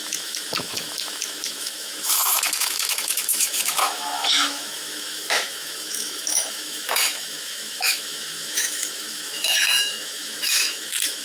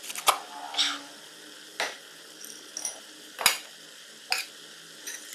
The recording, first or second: second